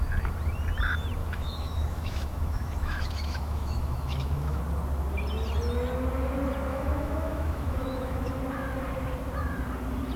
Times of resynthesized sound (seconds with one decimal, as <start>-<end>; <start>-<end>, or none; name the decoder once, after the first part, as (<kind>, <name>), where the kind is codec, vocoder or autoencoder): 1.2-4.6 (autoencoder, DAC-VAE); 6.7-8.3